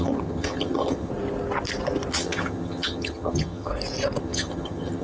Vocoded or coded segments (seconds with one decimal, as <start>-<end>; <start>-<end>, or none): 0.0-1.1; 2.1-3.7; 4.2-5.0